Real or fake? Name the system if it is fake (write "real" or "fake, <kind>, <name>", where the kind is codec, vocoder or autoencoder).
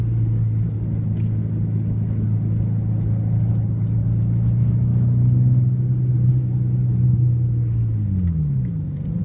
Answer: real